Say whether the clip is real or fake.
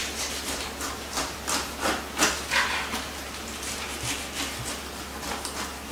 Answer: real